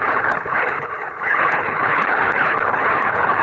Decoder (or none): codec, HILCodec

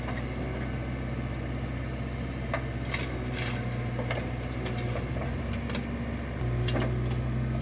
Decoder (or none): none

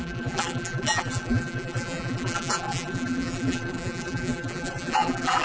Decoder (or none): vocoder, BigVGAN v2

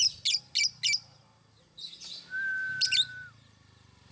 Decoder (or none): none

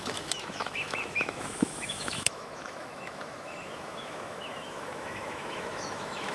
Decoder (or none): autoencoder, DAC-VAE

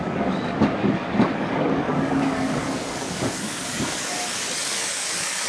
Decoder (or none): codec, DAC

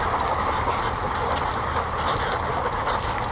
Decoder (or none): none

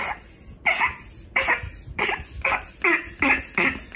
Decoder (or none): none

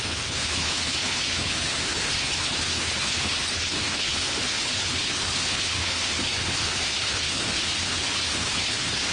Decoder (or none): codec, HILCodec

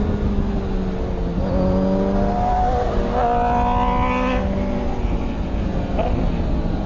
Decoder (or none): none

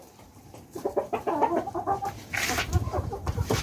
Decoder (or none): vocoder, BigVGAN v2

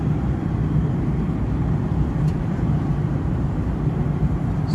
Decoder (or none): vocoder, BigVGAN v2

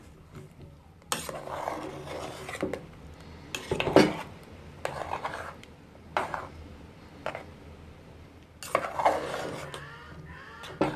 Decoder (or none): none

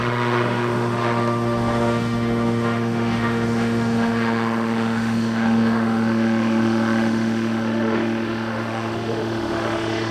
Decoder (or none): autoencoder, DAC-VAE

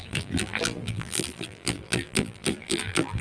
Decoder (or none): vocoder, BigVGAN v2